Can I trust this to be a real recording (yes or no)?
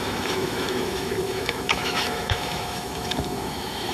no